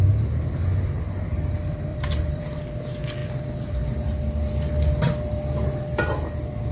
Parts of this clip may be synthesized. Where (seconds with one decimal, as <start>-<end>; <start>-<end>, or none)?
1.9-2.4